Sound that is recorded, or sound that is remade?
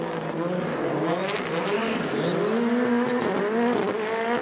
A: recorded